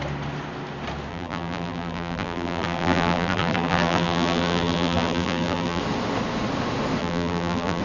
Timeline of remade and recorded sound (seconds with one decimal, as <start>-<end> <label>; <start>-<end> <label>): 0.0-1.1 recorded; 1.1-5.8 remade; 5.8-7.0 recorded; 7.0-7.8 remade